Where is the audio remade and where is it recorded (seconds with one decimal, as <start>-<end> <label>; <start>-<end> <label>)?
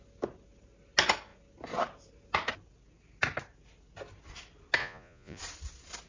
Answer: 0.0-4.8 recorded; 4.8-5.4 remade; 5.4-6.1 recorded